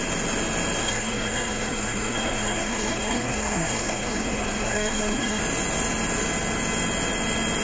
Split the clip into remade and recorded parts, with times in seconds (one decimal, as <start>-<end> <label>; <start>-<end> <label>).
0.0-0.8 recorded; 0.8-5.4 remade; 5.4-7.6 recorded

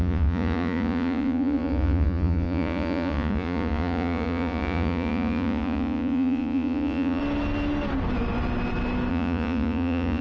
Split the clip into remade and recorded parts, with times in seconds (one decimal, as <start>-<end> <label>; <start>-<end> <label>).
0.0-7.2 remade; 7.2-9.1 recorded; 9.1-10.2 remade

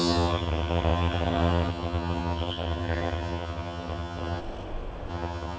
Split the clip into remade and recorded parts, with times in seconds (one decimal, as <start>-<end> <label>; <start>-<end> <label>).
0.0-4.4 remade; 4.4-5.1 recorded; 5.1-5.6 remade

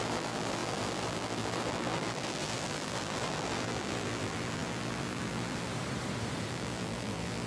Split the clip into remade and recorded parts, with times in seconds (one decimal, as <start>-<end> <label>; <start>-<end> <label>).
0.0-5.7 remade; 5.7-6.5 recorded; 6.5-7.5 remade

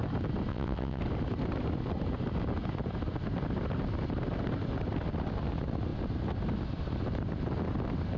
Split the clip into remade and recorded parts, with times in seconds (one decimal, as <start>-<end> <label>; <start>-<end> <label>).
0.0-0.5 recorded; 0.5-1.0 remade; 1.0-8.2 recorded

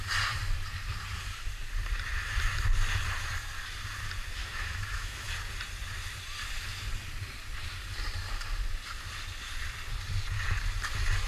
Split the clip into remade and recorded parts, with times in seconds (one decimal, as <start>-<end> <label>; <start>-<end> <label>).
0.0-4.4 recorded; 4.4-5.3 remade; 5.3-11.3 recorded